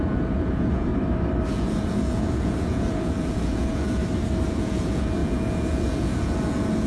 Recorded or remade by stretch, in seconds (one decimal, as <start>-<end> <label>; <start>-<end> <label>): 0.0-0.9 remade; 0.9-1.5 recorded; 1.5-4.0 remade; 4.0-4.5 recorded; 4.5-6.9 remade